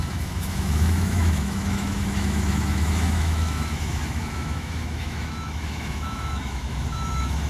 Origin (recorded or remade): remade